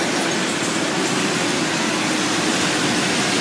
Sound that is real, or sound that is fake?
real